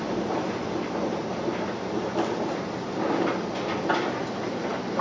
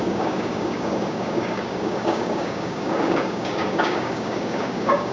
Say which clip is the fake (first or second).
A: second